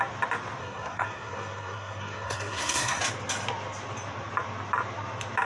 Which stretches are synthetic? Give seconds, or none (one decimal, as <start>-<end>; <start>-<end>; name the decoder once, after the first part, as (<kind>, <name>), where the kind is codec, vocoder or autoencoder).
0.6-3.0 (codec, SNAC)